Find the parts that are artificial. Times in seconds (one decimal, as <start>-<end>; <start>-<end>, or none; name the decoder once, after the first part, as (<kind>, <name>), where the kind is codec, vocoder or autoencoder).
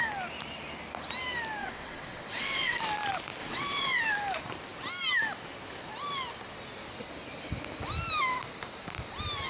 1.6-2.8 (vocoder, WaveNeXt); 3.4-4.0